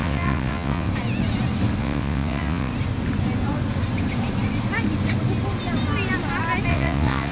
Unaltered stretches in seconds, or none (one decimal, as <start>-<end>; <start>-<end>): 0.9-1.8; 2.7-6.7